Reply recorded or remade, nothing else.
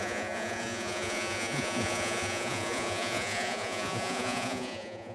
remade